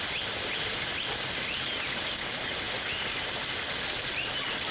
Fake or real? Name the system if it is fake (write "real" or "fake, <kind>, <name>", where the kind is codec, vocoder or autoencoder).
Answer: real